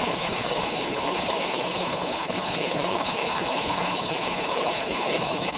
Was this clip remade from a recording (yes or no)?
yes